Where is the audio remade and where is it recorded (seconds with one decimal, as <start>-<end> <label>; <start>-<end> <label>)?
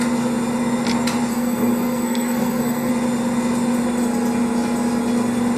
0.0-1.3 recorded; 1.3-2.9 remade; 2.9-5.6 recorded